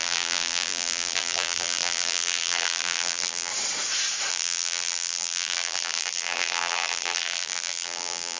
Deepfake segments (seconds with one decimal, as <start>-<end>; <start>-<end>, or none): 0.0-3.5; 4.3-8.4